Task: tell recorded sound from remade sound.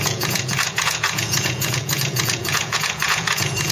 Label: remade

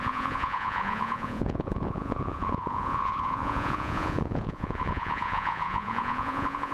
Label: remade